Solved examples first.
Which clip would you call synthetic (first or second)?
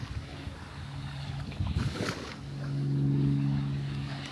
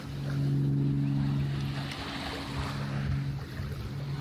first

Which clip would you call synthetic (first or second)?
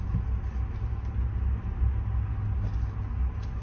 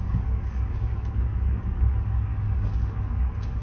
second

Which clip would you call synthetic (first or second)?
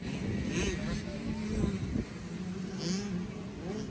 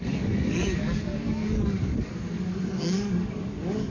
second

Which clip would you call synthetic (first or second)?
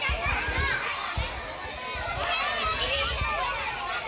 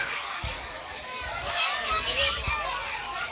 second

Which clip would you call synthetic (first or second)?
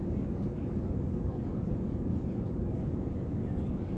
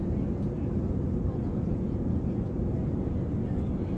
first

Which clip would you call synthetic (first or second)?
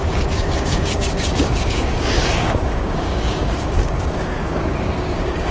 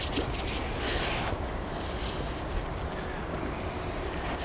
first